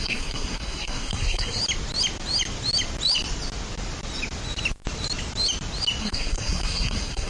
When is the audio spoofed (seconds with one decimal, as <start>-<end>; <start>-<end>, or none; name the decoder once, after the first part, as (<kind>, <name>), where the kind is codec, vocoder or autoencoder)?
0.0-1.6 (codec, SNAC); 6.0-7.3